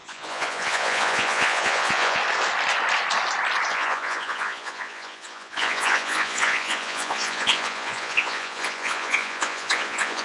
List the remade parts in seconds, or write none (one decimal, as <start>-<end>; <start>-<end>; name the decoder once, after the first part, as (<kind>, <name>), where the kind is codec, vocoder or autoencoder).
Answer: 0.0-2.2 (vocoder, Vocos); 3.7-10.2